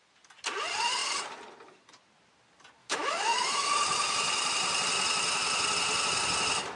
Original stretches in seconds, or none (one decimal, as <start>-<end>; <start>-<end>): 0.0-2.8; 3.7-6.8